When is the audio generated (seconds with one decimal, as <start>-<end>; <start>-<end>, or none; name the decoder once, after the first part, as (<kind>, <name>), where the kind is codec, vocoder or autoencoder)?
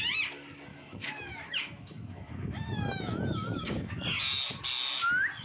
0.7-3.9 (autoencoder, DAC-VAE)